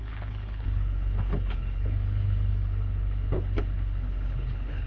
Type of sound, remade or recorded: remade